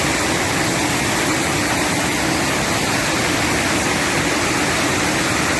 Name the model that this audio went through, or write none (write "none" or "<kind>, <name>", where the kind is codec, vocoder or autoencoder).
none